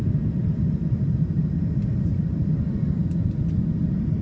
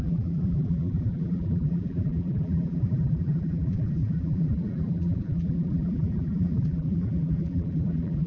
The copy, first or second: second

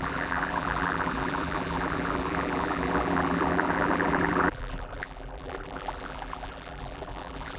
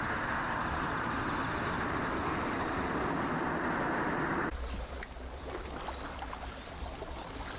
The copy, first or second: first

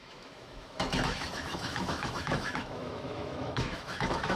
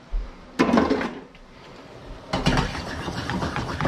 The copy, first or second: first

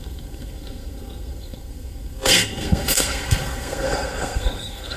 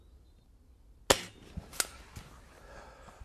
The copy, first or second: first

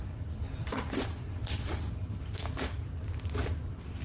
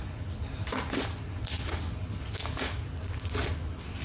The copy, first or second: first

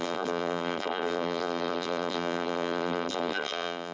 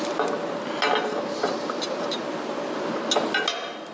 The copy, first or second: first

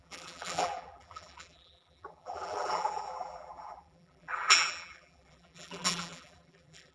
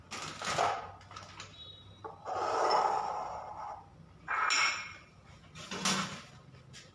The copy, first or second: first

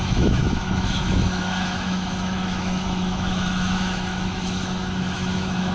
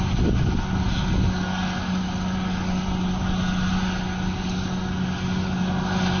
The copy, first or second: first